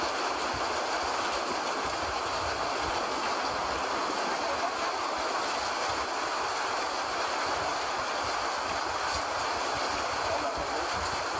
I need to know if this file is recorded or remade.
recorded